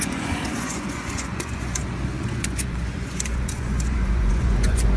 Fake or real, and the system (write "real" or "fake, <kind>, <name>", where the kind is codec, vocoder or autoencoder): fake, vocoder, Vocos